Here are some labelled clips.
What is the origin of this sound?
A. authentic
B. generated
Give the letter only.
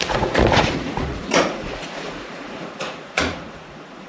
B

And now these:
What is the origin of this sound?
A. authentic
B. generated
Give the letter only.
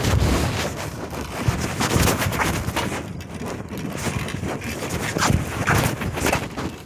A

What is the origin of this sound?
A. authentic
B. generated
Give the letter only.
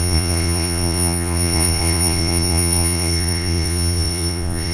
B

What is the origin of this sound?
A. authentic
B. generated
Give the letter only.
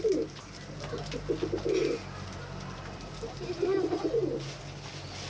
A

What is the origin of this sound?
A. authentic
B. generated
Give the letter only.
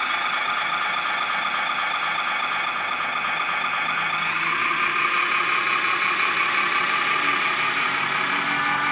A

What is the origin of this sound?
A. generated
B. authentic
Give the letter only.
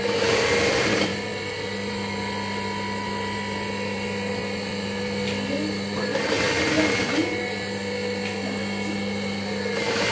A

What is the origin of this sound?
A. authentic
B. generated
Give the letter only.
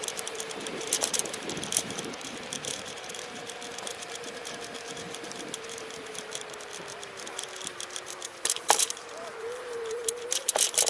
B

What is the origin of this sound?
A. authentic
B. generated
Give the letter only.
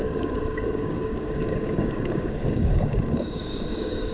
B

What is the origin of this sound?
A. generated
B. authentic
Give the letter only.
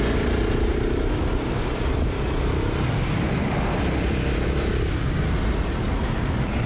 B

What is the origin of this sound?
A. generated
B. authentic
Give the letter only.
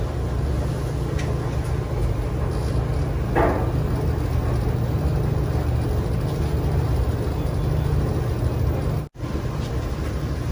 B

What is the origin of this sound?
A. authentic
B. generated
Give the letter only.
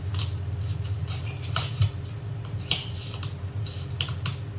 A